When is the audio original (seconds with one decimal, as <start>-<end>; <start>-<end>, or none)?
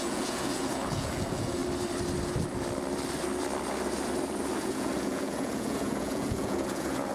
1.6-4.6